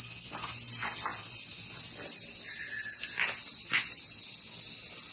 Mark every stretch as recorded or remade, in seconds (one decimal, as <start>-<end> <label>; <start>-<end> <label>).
0.0-5.1 recorded